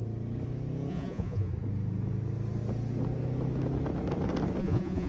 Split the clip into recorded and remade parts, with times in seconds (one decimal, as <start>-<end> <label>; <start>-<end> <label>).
0.0-0.9 recorded; 0.9-1.5 remade; 1.5-4.6 recorded; 4.6-5.1 remade

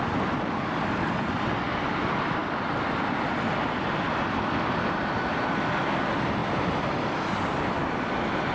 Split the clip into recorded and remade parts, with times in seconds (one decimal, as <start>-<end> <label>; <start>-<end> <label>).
0.0-8.5 recorded